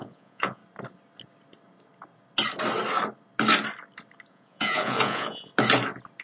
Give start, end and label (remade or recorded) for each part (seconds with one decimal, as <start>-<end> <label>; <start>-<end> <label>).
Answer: 0.0-0.6 remade; 0.6-4.3 recorded; 4.3-5.5 remade; 5.5-6.2 recorded